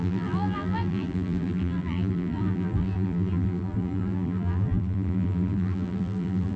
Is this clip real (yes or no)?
no